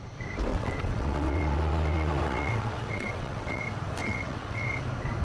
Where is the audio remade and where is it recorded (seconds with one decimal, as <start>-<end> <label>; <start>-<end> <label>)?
0.0-0.5 recorded; 0.5-3.6 remade; 3.6-4.0 recorded; 4.0-4.8 remade; 4.8-5.2 recorded